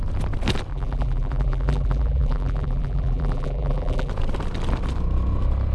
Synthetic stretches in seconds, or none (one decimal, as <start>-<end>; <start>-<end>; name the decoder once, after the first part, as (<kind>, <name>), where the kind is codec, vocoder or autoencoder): 0.7-4.1 (vocoder, BigVGAN v2)